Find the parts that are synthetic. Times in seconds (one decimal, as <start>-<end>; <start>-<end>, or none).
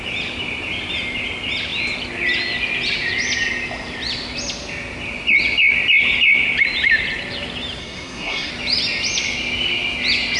7.8-8.5